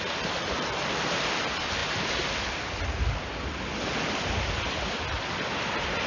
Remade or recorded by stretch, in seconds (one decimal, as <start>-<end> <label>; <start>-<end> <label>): 0.0-6.1 recorded